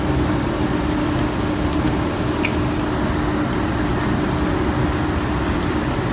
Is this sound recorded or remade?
recorded